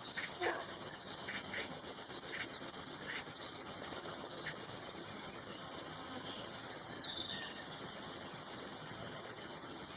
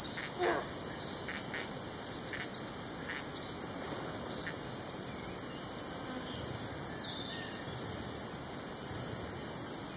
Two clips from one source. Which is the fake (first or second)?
first